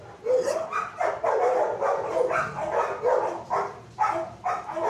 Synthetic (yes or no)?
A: no